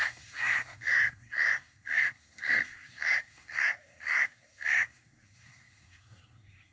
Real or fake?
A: fake